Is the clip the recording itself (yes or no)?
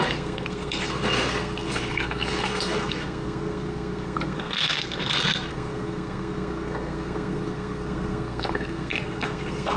no